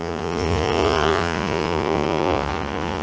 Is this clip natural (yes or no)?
no